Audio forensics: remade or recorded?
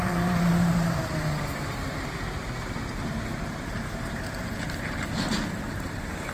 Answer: remade